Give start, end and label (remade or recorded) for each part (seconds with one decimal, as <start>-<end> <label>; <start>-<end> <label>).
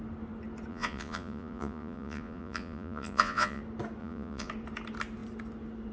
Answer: 0.0-0.7 recorded; 0.7-3.6 remade; 3.6-4.0 recorded; 4.0-4.5 remade; 4.5-5.9 recorded